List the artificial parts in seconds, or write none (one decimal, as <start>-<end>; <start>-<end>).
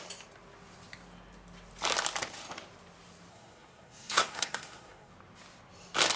3.3-5.1